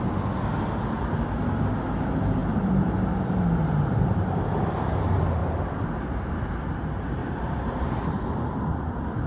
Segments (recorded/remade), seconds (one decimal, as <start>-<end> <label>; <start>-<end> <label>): 0.0-2.4 recorded; 2.4-4.4 remade; 4.4-5.4 recorded; 5.4-6.8 remade; 6.8-7.2 recorded; 7.2-8.3 remade; 8.3-9.3 recorded